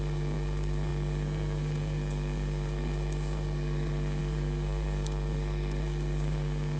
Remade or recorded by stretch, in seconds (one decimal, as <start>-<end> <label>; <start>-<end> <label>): 0.0-6.8 remade